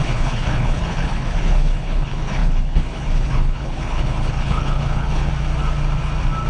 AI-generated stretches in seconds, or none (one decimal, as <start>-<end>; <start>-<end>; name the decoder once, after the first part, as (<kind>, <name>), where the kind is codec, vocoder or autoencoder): 0.0-5.3 (codec, HILCodec)